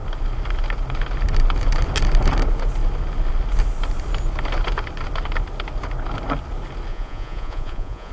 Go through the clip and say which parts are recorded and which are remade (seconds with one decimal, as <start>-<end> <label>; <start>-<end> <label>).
0.0-6.9 recorded; 6.9-8.1 remade